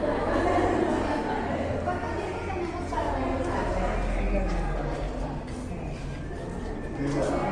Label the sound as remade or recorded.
recorded